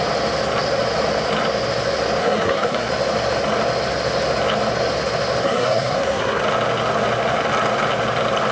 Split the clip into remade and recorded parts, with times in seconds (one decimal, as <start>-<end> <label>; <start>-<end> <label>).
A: 0.0-2.2 recorded; 2.2-2.9 remade; 2.9-5.4 recorded; 5.4-6.4 remade; 6.4-8.5 recorded